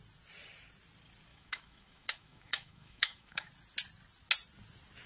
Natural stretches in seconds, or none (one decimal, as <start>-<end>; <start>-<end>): 0.0-1.3; 3.5-5.1